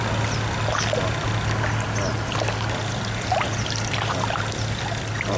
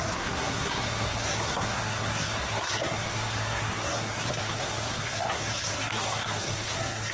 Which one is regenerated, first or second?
second